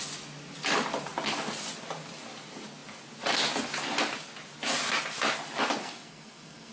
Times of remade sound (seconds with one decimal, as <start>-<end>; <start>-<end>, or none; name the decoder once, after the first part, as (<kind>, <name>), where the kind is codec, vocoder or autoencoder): 5.8-6.7 (codec, SNAC)